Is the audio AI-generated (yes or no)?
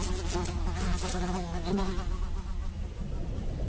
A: no